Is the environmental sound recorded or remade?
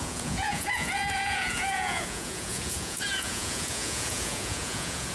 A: remade